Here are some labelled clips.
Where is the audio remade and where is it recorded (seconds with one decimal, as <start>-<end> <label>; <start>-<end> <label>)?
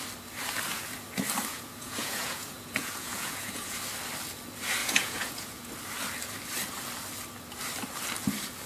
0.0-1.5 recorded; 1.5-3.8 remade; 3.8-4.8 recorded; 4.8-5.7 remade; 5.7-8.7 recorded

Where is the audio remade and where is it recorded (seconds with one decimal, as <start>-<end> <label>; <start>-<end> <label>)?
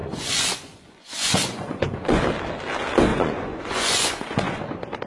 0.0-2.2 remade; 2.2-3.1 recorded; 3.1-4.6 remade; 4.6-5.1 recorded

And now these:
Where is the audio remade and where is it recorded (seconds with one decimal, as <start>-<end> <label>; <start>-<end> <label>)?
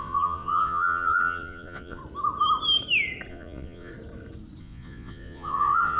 0.0-2.0 remade; 2.0-3.3 recorded; 3.3-3.9 remade; 3.9-4.6 recorded; 4.6-6.0 remade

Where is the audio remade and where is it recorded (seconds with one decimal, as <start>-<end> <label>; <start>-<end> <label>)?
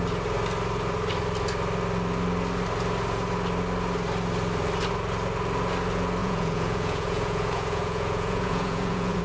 0.0-6.2 recorded; 6.2-9.2 remade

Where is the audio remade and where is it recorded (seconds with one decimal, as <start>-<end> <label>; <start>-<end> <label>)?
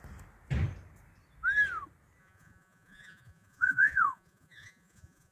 0.0-2.2 recorded; 2.2-5.3 remade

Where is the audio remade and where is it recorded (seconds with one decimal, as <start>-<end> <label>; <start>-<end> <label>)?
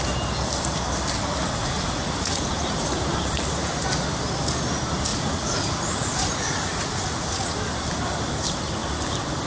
0.0-1.6 recorded; 1.6-2.9 remade; 2.9-5.1 recorded; 5.1-7.5 remade; 7.5-9.5 recorded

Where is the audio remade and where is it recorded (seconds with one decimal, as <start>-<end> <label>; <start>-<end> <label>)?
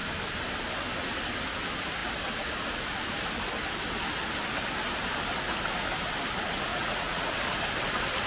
0.0-6.7 recorded; 6.7-7.3 remade; 7.3-8.3 recorded